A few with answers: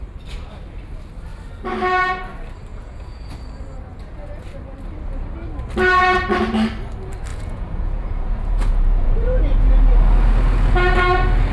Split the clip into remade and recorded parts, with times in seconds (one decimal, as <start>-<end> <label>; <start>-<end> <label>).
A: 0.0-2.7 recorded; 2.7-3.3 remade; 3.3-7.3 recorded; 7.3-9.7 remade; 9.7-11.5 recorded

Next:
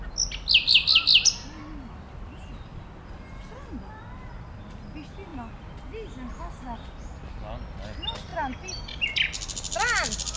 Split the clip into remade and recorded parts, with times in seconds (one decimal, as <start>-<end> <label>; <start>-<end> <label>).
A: 0.0-10.4 recorded

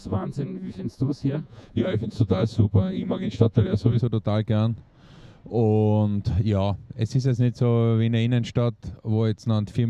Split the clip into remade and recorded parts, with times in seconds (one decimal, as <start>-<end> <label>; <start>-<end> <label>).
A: 0.0-4.0 remade; 4.0-9.9 recorded

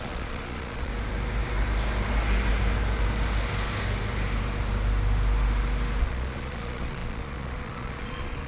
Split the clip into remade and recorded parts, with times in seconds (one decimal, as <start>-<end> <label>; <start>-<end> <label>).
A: 0.0-0.9 remade; 0.9-6.0 recorded; 6.0-8.5 remade

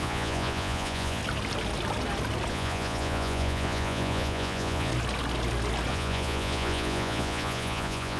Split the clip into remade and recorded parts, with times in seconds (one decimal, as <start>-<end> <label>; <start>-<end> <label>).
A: 0.0-1.2 remade; 1.2-2.5 recorded; 2.5-4.9 remade; 4.9-5.9 recorded; 5.9-8.2 remade